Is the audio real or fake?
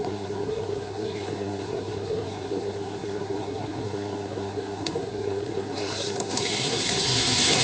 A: fake